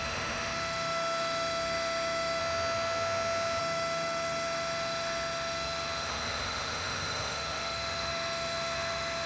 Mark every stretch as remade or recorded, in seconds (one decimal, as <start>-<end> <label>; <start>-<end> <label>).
0.0-2.4 remade; 2.4-3.6 recorded; 3.6-9.3 remade